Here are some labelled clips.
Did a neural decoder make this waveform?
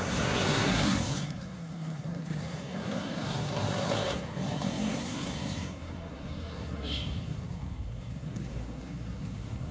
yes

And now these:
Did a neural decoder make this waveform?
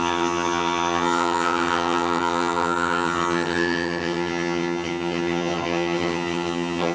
yes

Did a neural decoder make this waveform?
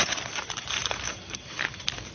yes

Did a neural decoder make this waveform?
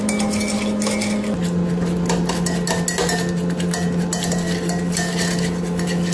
no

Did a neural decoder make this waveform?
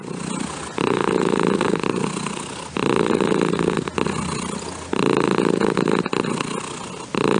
no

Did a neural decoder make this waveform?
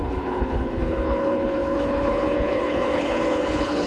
yes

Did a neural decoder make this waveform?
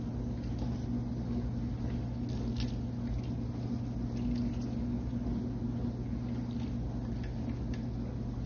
no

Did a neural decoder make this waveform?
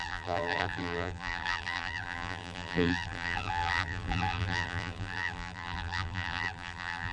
yes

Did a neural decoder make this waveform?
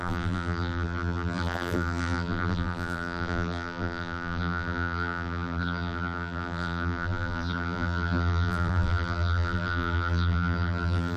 yes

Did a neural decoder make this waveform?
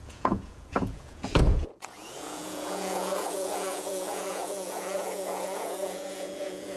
yes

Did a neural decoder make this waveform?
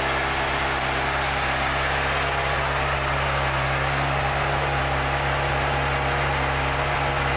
no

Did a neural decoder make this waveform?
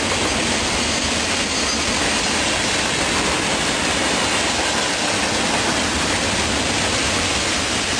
no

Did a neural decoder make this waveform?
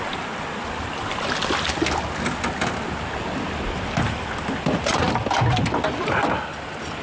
no